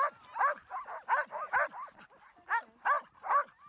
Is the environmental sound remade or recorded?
recorded